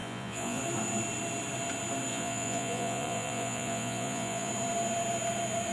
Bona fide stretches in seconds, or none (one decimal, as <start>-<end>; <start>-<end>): 0.6-2.1; 4.5-5.7